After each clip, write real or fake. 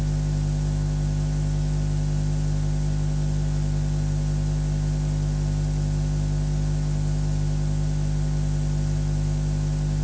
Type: real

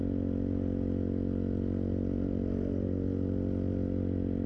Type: real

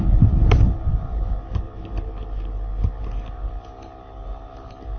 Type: real